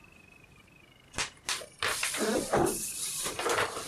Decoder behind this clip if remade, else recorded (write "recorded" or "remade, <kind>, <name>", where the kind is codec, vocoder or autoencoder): remade, vocoder, BigVGAN v2